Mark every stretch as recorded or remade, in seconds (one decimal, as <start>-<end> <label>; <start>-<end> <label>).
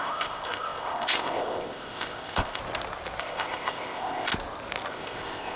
0.0-2.6 remade; 2.6-3.2 recorded; 3.2-4.3 remade; 4.3-4.9 recorded; 4.9-5.6 remade